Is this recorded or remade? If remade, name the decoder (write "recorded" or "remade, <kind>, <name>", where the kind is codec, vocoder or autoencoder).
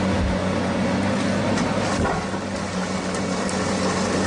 recorded